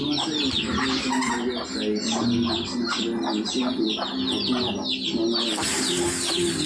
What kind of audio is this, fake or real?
real